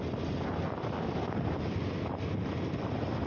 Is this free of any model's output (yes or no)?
yes